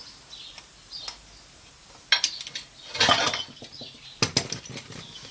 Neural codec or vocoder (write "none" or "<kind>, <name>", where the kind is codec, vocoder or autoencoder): none